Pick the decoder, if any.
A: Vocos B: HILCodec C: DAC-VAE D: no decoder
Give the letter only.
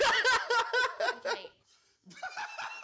D